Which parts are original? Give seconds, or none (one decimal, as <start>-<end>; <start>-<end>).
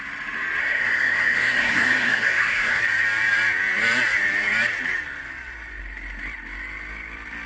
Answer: 0.0-0.6; 2.8-7.5